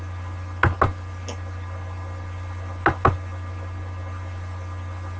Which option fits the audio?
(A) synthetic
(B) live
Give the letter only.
B